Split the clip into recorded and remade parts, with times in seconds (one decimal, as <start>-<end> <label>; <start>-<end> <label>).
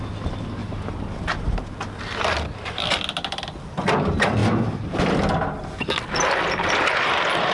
0.0-7.5 recorded